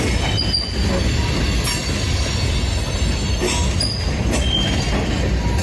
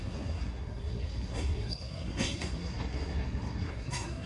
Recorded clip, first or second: first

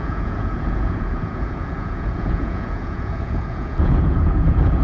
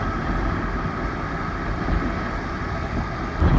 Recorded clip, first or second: second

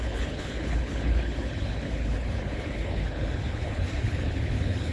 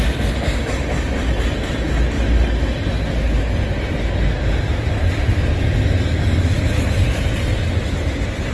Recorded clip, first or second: second